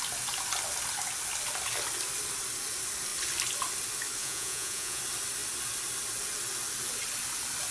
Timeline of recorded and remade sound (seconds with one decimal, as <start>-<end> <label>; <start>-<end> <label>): 0.0-4.2 recorded; 4.2-5.0 remade; 5.0-7.7 recorded